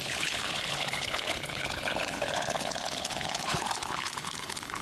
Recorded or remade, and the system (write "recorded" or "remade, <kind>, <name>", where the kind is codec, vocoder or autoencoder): remade, codec, HILCodec